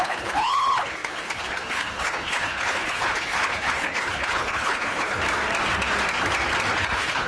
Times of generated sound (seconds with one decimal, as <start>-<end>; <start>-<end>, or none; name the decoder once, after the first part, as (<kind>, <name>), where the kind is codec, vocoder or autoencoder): 0.0-5.2 (codec, HILCodec); 6.7-7.3